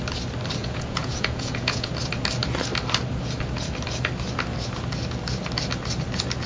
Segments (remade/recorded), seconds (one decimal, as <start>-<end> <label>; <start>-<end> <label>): 0.0-0.6 recorded; 0.6-1.9 remade; 1.9-6.5 recorded